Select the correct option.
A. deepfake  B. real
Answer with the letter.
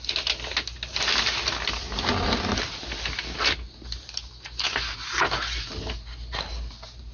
B